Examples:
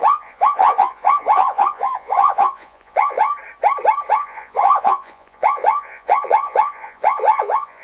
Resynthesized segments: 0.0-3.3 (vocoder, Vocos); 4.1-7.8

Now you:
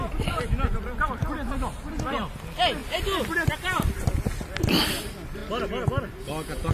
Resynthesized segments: none

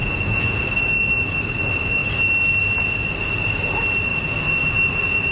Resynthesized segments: 0.0-0.6 (vocoder, Vocos)

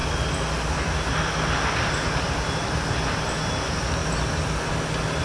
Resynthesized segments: none

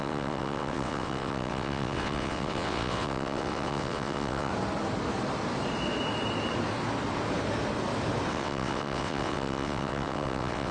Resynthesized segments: 0.0-4.5 (vocoder, WaveNeXt); 8.3-10.7